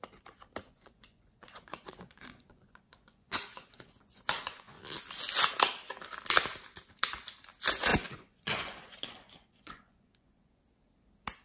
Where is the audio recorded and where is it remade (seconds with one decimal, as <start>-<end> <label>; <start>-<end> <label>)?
0.0-0.6 recorded; 0.6-4.8 remade; 4.8-7.9 recorded; 7.9-10.6 remade; 10.6-11.4 recorded